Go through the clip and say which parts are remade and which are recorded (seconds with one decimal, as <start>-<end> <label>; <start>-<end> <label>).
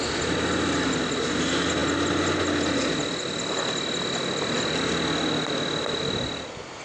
0.0-6.8 recorded